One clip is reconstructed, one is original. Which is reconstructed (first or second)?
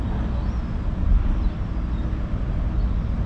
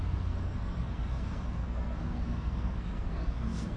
second